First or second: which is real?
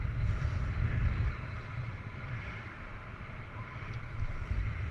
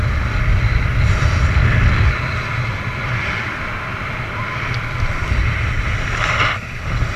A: second